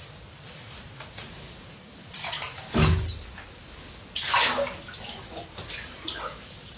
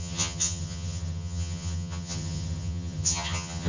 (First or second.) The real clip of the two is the first